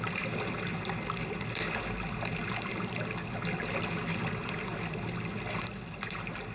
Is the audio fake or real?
real